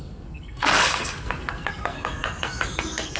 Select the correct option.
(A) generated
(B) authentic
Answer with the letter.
A